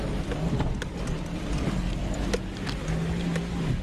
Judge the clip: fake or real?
real